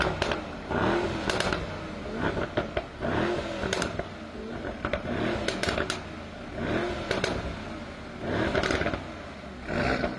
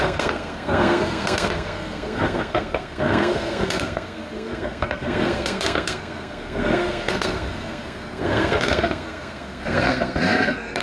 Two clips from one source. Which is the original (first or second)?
first